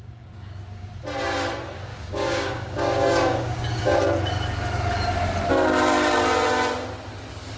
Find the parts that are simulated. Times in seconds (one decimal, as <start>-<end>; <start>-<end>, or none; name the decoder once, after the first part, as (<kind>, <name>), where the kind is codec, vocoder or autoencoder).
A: 0.0-0.9 (codec, DAC); 1.9-4.0